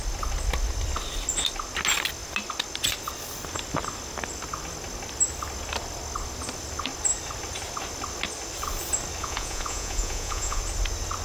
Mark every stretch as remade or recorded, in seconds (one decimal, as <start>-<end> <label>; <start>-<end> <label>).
0.0-9.2 recorded; 9.2-10.6 remade; 10.6-11.2 recorded